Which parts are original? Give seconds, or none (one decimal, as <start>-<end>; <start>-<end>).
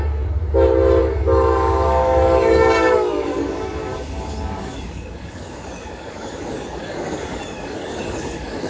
0.4-1.0